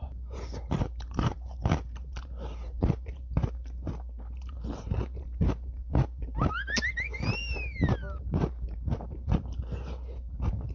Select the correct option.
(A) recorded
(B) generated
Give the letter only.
B